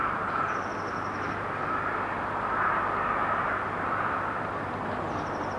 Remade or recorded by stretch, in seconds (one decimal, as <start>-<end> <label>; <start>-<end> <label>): 0.0-0.5 remade; 0.5-5.6 recorded

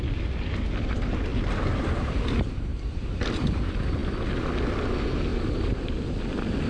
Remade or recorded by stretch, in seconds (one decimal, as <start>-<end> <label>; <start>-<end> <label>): 0.0-1.3 recorded; 1.3-2.2 remade; 2.2-2.7 recorded; 2.7-3.2 remade; 3.2-5.3 recorded; 5.3-6.0 remade; 6.0-6.7 recorded